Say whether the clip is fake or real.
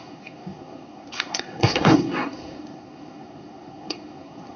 fake